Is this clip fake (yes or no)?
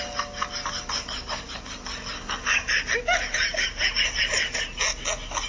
no